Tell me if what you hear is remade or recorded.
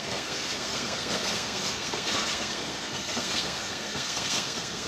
remade